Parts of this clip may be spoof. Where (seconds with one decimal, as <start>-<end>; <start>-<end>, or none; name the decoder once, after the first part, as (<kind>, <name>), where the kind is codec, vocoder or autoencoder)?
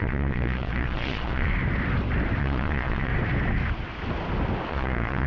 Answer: 0.0-1.5 (vocoder, Vocos); 2.4-3.1; 4.7-5.3